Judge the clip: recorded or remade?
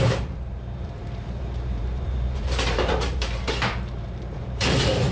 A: remade